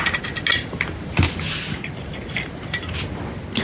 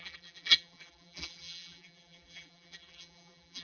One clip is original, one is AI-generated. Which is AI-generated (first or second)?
second